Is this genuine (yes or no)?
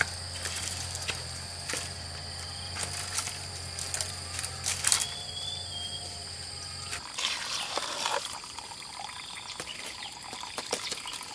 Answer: yes